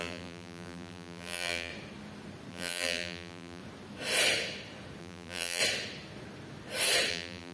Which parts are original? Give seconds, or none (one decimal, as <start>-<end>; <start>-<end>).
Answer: 1.7-2.5; 3.6-5.0; 5.6-7.1